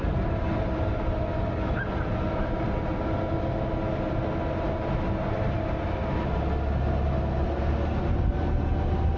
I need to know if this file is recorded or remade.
recorded